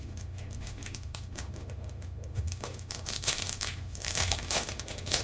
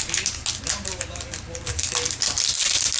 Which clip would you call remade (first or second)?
first